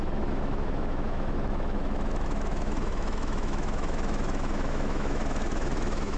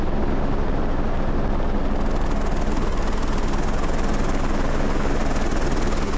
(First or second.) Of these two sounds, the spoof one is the first